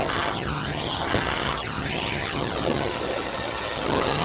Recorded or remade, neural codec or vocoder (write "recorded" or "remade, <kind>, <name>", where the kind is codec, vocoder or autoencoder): remade, vocoder, HiFi-GAN